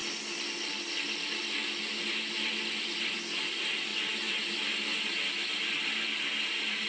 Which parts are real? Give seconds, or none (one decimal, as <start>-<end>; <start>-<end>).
0.0-6.9